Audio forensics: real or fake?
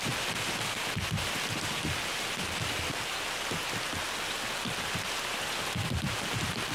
real